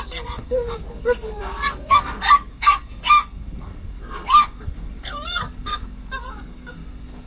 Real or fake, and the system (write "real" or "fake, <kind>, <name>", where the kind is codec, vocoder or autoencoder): fake, codec, SNAC